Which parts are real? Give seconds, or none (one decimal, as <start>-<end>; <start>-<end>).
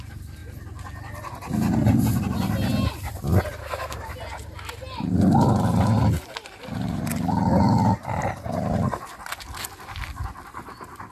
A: 0.0-3.6; 4.1-11.1